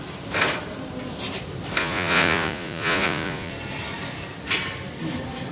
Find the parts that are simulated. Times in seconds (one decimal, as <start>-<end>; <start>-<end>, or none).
1.8-3.5